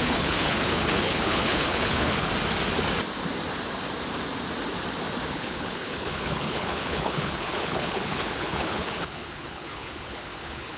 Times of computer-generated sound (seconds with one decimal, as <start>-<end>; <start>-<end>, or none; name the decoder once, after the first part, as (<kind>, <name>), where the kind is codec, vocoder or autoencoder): 0.0-2.3 (codec, HILCodec); 5.3-10.8